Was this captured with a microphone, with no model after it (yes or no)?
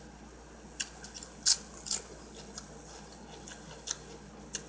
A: yes